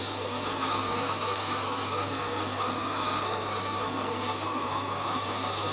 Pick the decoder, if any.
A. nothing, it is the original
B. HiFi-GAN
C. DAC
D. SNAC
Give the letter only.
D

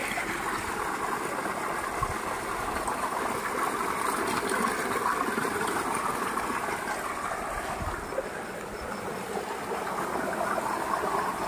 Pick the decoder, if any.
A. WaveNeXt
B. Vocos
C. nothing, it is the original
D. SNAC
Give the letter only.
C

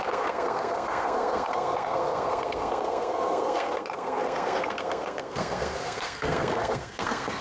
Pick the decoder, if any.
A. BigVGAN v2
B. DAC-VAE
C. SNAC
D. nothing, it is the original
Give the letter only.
C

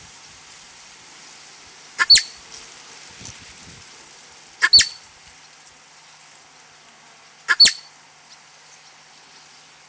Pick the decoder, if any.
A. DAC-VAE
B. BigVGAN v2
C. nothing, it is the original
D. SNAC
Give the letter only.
C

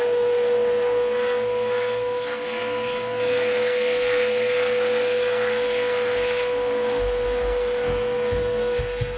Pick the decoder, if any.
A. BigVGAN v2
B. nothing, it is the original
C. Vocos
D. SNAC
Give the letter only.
D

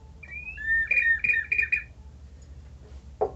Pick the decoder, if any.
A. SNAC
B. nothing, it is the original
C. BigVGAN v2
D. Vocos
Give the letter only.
B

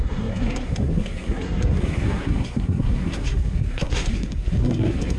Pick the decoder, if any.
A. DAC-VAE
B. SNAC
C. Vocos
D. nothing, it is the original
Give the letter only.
B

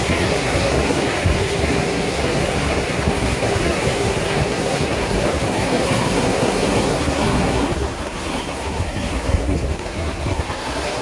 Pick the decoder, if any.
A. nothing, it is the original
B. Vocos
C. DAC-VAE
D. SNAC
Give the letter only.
D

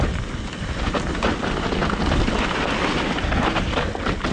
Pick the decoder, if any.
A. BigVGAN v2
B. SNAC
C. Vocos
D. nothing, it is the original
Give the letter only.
D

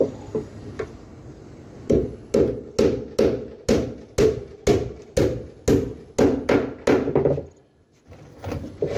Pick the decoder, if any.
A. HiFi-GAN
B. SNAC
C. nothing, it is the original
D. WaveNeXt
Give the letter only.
C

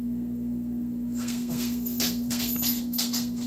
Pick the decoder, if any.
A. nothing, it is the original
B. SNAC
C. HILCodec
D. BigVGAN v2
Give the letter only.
B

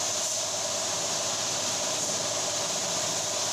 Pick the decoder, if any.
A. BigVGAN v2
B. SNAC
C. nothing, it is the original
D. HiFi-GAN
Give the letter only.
C